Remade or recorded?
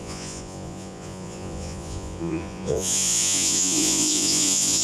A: remade